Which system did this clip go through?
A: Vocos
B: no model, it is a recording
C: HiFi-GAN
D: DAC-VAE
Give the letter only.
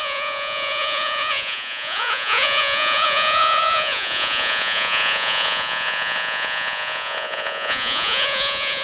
A